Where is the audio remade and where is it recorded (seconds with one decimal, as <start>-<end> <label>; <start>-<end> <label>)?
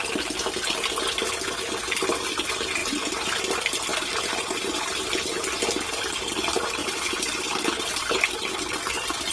0.0-2.8 recorded; 2.8-3.4 remade; 3.4-3.9 recorded; 3.9-5.2 remade; 5.2-6.8 recorded; 6.8-7.9 remade; 7.9-9.3 recorded